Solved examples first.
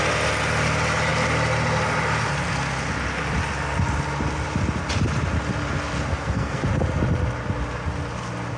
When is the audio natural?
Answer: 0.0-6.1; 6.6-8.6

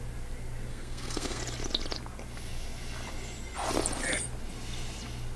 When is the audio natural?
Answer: 0.0-0.7; 1.4-5.4

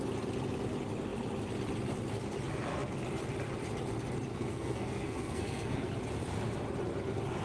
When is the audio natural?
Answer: 0.0-4.3; 5.9-7.4